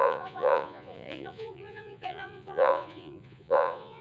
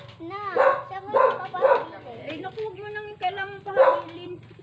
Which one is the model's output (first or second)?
first